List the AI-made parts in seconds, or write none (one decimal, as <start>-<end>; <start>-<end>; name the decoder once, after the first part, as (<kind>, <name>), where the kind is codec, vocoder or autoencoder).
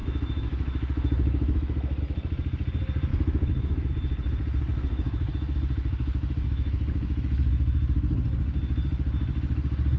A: 0.0-2.0 (autoencoder, DAC-VAE); 3.1-3.9; 4.7-5.3; 6.2-7.5